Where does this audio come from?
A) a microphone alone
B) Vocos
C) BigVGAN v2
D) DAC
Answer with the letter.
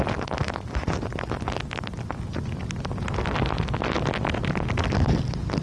A